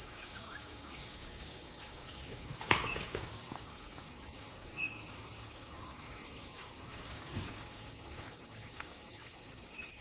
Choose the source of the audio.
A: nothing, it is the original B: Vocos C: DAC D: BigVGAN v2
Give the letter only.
C